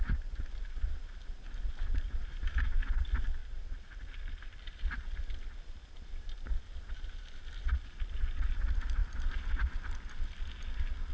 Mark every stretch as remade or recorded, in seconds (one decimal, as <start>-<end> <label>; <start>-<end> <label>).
0.0-3.4 recorded; 3.4-4.9 remade; 4.9-11.1 recorded